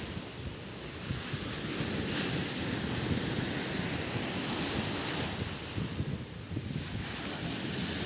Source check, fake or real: real